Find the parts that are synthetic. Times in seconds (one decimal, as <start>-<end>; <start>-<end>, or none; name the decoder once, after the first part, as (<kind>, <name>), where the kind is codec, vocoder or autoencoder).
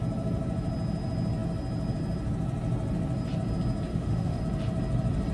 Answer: 3.9-4.4 (autoencoder, DAC-VAE)